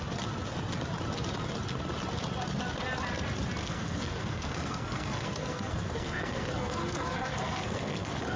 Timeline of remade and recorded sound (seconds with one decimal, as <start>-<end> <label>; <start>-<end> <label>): 0.0-3.6 recorded; 3.6-8.4 remade